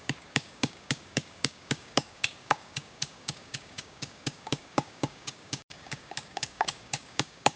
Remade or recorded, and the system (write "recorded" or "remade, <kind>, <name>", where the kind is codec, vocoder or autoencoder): remade, codec, DAC